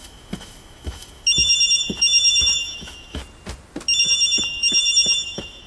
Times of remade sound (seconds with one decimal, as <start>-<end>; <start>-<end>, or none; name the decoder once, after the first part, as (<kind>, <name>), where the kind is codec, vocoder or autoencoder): 0.0-3.2 (autoencoder, DAC-VAE); 4.0-5.7